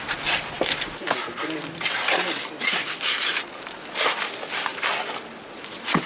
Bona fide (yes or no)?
yes